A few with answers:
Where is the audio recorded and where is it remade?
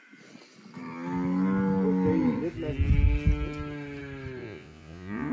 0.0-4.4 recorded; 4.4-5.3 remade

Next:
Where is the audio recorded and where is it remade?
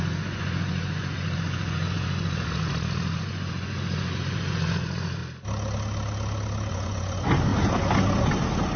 0.0-5.2 remade; 5.2-6.7 recorded; 6.7-7.5 remade; 7.5-8.8 recorded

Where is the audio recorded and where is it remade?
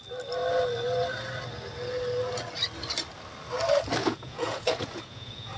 0.0-4.0 recorded; 4.0-5.6 remade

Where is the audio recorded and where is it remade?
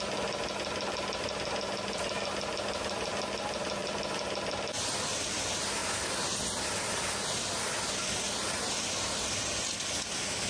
0.0-10.5 recorded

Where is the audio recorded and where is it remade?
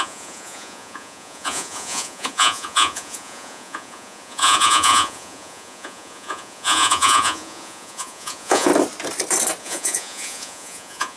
0.0-8.7 remade; 8.7-9.6 recorded; 9.6-11.2 remade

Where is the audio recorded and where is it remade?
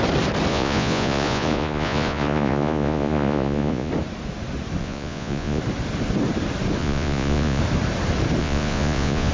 0.0-0.5 recorded; 0.5-3.9 remade; 3.9-4.8 recorded; 4.8-5.6 remade; 5.6-6.8 recorded; 6.8-7.6 remade; 7.6-8.4 recorded; 8.4-9.3 remade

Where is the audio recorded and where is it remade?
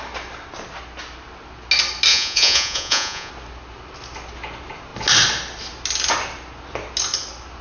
0.0-2.1 recorded; 2.1-3.3 remade; 3.3-7.6 recorded